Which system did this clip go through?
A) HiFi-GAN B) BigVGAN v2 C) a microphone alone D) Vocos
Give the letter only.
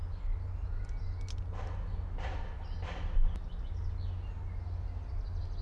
C